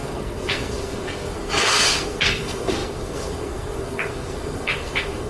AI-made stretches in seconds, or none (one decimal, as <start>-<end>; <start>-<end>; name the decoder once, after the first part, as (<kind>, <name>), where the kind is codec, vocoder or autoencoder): 0.0-5.3 (codec, SNAC)

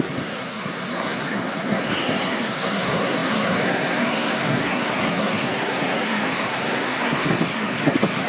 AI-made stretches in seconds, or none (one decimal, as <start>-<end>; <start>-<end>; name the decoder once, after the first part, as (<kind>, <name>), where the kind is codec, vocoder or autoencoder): 0.0-8.3 (codec, SNAC)

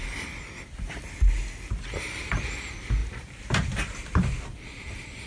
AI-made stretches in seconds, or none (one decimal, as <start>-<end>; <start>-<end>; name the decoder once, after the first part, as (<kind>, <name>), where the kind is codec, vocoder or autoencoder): none

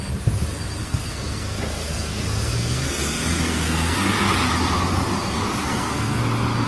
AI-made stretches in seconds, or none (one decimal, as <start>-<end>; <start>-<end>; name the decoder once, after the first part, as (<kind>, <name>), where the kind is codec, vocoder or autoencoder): 0.8-4.1 (codec, SNAC); 5.6-6.2

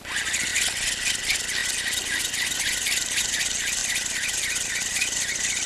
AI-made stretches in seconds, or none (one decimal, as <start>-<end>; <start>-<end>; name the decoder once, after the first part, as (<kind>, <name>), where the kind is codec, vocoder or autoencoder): none